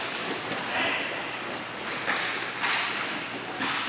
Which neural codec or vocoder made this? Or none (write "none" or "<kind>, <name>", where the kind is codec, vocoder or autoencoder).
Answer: none